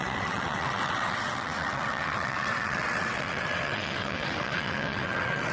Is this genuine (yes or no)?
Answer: no